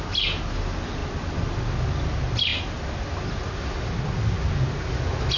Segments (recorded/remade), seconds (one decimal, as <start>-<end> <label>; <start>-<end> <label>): 0.0-5.4 recorded